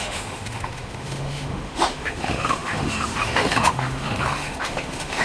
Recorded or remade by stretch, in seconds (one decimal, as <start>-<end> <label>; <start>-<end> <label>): 0.0-5.2 remade